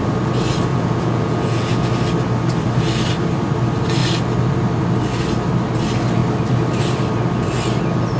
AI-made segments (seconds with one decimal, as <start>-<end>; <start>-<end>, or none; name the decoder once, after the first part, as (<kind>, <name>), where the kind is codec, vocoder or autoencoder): 0.7-1.9 (vocoder, Vocos)